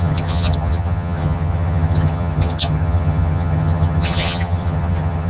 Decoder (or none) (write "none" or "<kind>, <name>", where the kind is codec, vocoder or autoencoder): vocoder, HiFi-GAN